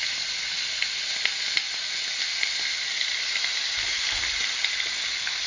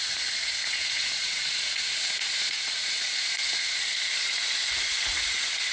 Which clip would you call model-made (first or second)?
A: second